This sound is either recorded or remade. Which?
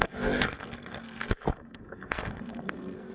remade